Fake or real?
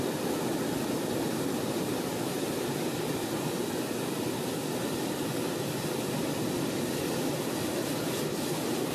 real